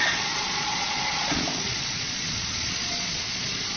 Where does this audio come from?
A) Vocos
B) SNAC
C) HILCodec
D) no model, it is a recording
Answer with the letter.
A